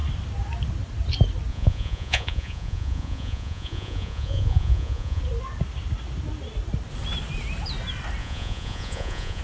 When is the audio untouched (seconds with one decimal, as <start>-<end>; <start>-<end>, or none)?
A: 0.0-1.5; 5.2-8.2